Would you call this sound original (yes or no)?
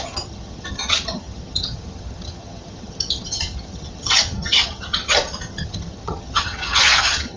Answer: no